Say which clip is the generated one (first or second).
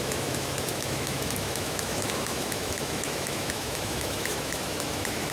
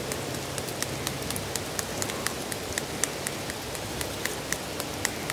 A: first